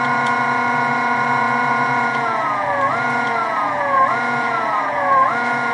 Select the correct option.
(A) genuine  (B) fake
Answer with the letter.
B